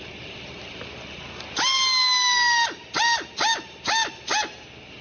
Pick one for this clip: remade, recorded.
recorded